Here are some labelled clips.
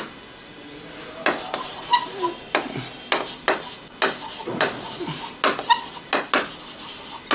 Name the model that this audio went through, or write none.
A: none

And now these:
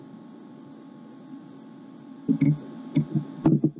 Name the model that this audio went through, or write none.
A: none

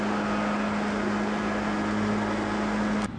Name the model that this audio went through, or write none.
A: none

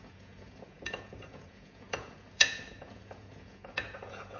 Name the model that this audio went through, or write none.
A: vocoder, Vocos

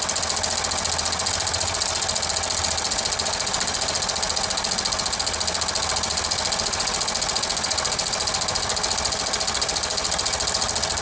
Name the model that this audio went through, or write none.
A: none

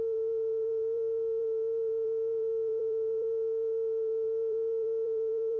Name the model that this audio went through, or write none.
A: vocoder, BigVGAN v2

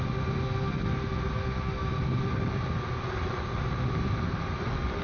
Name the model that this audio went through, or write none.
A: none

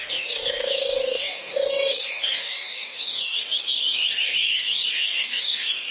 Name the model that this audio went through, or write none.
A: codec, DAC